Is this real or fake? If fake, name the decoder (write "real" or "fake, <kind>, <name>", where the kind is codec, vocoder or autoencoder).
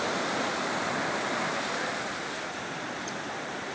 fake, vocoder, BigVGAN v2